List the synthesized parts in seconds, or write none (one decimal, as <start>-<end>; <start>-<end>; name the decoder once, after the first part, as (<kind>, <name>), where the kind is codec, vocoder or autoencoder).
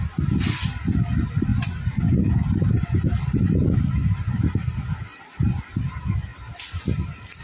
1.5-3.8 (vocoder, BigVGAN v2); 5.1-5.6